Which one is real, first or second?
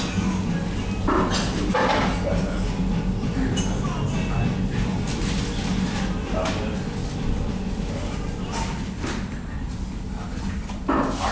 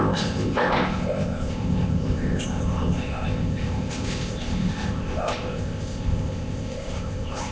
first